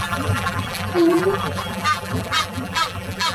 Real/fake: fake